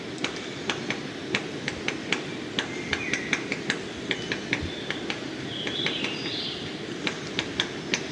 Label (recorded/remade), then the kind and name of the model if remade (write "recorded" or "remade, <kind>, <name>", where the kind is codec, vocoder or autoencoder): recorded